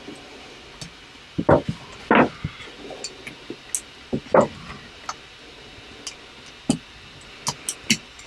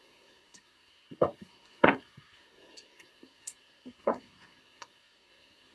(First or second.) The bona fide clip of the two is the first